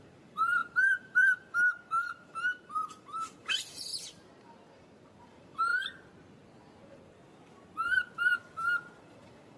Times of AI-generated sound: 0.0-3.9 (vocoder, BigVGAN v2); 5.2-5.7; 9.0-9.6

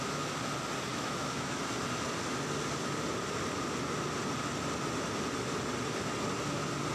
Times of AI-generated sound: 0.9-1.6 (autoencoder, DAC-VAE)

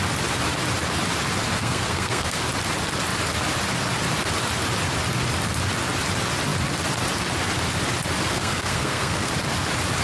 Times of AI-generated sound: 1.6-2.4 (codec, SNAC); 8.3-9.3

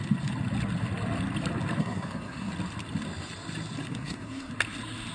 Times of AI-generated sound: 1.8-2.5 (codec, SNAC); 3.9-4.5

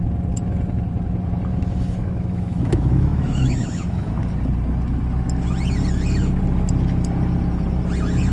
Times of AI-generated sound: 1.5-4.2 (autoencoder, DAC-VAE)

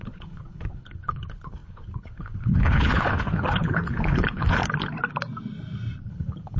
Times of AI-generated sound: 0.0-4.6 (codec, HILCodec); 6.1-6.6